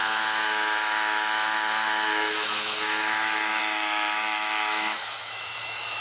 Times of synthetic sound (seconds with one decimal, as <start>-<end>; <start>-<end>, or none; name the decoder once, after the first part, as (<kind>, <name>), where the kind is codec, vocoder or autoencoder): 0.0-6.0 (autoencoder, DAC-VAE)

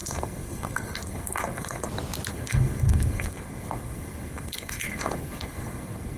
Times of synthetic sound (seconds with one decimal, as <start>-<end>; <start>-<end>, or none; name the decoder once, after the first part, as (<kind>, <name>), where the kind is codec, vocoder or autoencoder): 0.0-1.9 (codec, SNAC); 2.3-6.2

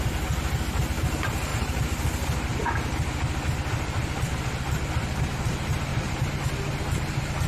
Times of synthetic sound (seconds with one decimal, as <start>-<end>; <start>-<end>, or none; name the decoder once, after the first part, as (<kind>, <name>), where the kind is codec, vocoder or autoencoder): 1.5-2.5 (vocoder, BigVGAN v2); 5.9-6.5